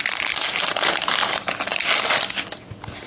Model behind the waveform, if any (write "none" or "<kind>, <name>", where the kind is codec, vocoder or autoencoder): none